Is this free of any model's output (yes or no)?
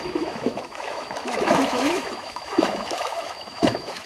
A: no